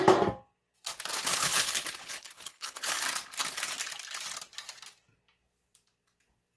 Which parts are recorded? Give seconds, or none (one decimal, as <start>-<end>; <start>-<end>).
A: 0.0-1.3; 3.0-6.6